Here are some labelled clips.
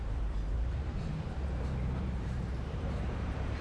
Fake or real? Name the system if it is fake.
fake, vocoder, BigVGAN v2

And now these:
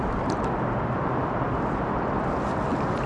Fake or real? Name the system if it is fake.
real